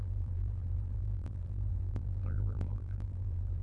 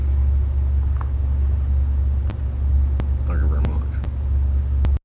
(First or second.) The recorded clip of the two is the second